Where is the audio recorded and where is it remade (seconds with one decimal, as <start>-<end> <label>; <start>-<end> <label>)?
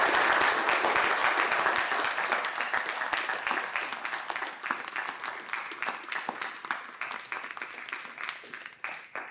0.0-9.3 recorded